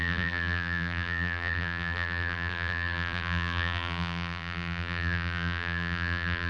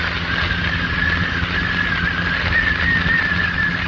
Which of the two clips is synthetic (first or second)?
first